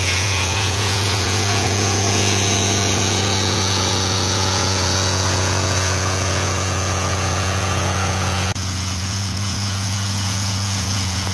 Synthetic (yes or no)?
yes